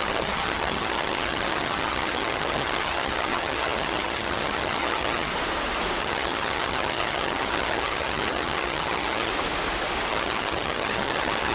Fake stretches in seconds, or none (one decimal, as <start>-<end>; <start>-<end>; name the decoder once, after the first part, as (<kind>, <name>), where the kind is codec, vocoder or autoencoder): 0.0-5.3 (vocoder, HiFi-GAN); 6.0-9.3; 10.1-11.5